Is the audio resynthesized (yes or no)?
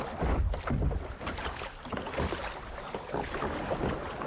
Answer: no